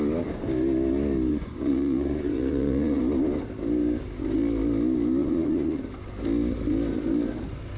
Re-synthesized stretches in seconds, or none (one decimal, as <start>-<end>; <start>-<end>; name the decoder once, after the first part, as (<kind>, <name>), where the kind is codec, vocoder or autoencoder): 1.3-3.0 (vocoder, Vocos); 5.2-5.8